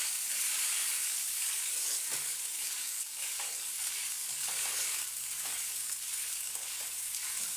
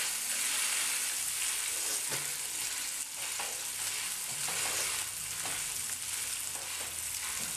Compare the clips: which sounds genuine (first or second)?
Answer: second